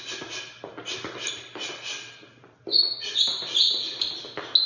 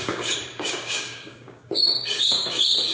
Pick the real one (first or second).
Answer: first